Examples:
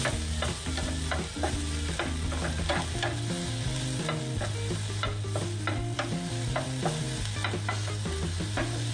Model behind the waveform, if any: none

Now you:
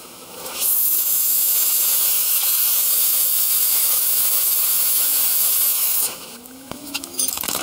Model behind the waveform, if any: autoencoder, DAC-VAE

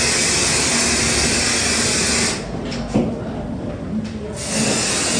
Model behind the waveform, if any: none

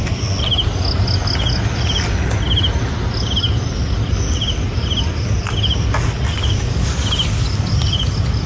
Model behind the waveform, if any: none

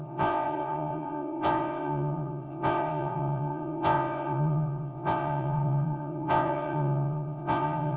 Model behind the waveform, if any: vocoder, Vocos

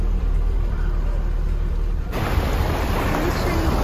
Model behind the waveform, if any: vocoder, BigVGAN v2